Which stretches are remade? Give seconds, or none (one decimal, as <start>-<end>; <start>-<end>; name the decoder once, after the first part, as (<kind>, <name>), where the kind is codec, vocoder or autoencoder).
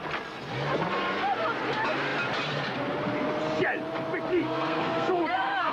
4.3-5.7 (codec, SNAC)